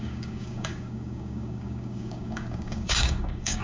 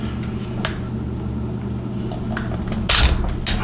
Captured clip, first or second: second